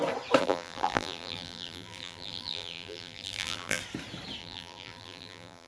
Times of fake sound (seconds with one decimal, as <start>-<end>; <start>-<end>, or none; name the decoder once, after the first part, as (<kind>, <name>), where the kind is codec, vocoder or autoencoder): 0.4-3.8 (vocoder, BigVGAN v2); 4.4-5.7